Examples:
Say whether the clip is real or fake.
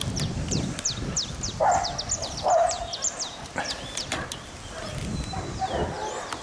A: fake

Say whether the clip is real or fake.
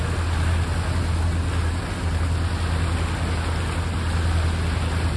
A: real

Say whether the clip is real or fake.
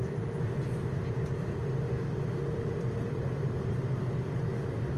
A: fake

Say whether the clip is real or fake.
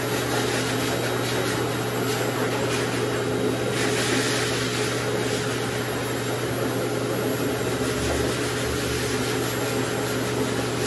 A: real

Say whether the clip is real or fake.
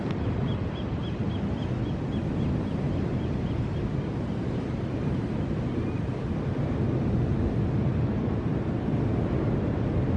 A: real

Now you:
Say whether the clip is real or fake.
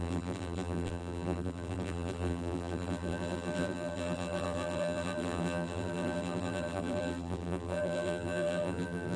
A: fake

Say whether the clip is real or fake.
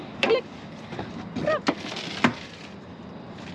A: real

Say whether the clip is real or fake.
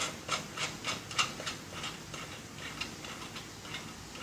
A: real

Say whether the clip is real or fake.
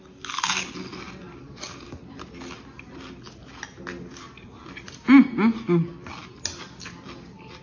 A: real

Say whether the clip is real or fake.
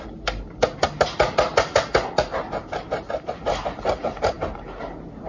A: real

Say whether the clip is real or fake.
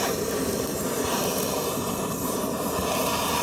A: fake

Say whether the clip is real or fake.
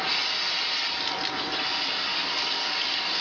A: real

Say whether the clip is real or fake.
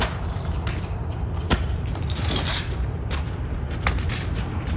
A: fake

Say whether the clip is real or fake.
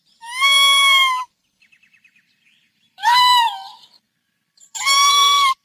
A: fake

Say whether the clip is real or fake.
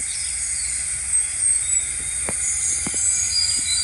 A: fake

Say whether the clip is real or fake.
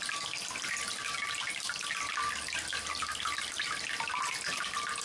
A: real